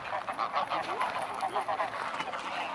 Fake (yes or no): no